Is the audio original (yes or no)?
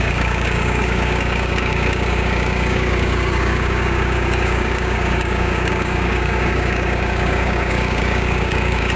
no